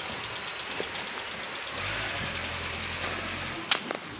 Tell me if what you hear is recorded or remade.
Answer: recorded